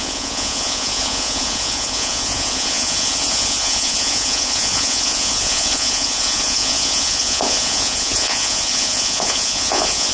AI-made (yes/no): yes